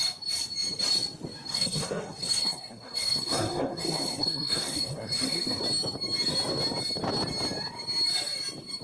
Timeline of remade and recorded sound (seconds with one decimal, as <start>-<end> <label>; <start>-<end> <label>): 0.0-1.5 recorded; 1.5-5.6 remade; 5.6-8.8 recorded